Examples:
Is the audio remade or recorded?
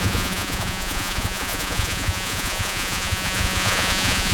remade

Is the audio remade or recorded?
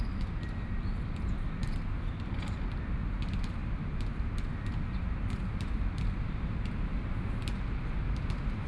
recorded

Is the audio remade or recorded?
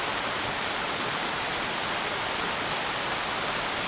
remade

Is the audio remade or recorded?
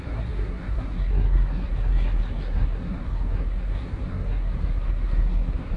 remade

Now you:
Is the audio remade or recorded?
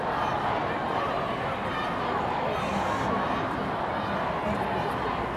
recorded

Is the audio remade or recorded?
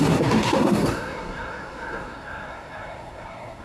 remade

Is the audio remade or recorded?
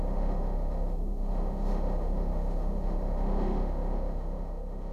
remade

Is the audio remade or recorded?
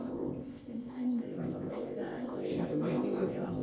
remade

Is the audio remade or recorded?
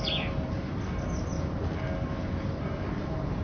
recorded